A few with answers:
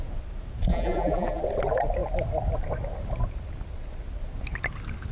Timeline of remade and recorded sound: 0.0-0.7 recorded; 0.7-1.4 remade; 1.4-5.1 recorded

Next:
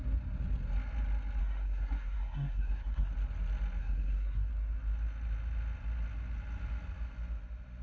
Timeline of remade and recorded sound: 0.0-1.4 recorded; 1.4-3.1 remade; 3.1-3.8 recorded; 3.8-4.5 remade; 4.5-7.8 recorded

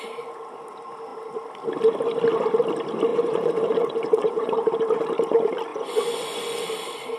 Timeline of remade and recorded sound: 0.0-3.1 recorded; 3.1-4.5 remade; 4.5-5.7 recorded; 5.7-6.6 remade; 6.6-7.2 recorded

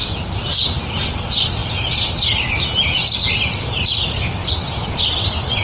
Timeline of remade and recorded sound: 0.0-0.8 remade; 0.8-1.6 recorded; 1.6-3.8 remade; 3.8-4.4 recorded; 4.4-5.0 remade; 5.0-5.6 recorded

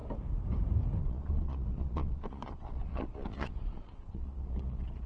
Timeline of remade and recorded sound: 0.0-1.0 recorded; 1.0-5.1 remade

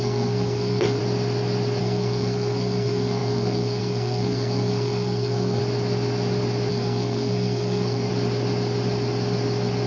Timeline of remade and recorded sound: 0.0-1.0 remade; 1.0-1.8 recorded; 1.8-5.6 remade; 5.6-6.7 recorded; 6.7-8.1 remade; 8.1-9.9 recorded